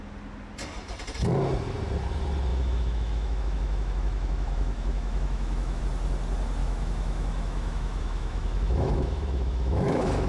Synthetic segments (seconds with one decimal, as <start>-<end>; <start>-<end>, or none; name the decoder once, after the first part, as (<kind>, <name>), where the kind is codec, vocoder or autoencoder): 2.5-5.8 (autoencoder, DAC-VAE); 6.6-10.3